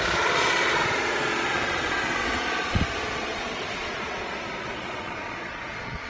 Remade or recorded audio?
remade